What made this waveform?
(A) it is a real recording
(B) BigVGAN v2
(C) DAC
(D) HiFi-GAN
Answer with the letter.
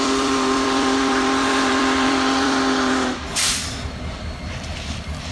B